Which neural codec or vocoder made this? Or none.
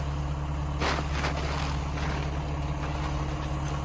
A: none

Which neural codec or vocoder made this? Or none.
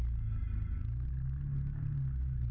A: none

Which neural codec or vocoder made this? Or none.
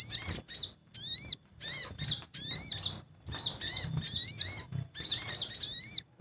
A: none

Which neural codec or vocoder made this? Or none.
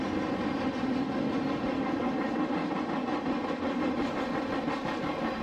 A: none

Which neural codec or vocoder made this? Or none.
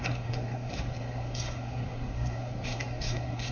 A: codec, SNAC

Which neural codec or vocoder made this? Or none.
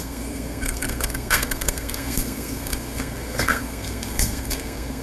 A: codec, SNAC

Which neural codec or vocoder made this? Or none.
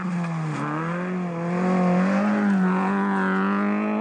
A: none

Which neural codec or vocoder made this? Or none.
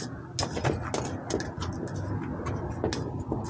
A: none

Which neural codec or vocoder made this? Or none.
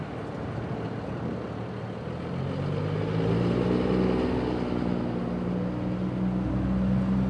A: none